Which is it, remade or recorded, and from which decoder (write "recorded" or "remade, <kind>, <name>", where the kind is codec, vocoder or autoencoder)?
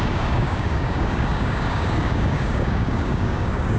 remade, codec, DAC